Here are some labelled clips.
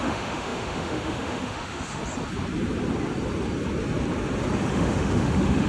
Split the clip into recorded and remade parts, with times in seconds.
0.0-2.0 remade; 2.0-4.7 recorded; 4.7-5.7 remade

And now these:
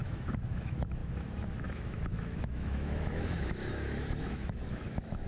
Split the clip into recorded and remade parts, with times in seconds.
0.0-5.3 remade

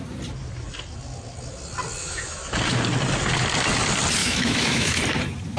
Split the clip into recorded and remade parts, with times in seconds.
0.0-2.0 recorded; 2.0-2.6 remade; 2.6-4.2 recorded; 4.2-5.0 remade; 5.0-5.6 recorded

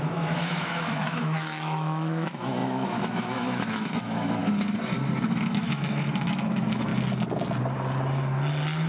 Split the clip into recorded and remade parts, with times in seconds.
0.0-4.4 remade; 4.4-5.2 recorded; 5.2-6.9 remade; 6.9-8.9 recorded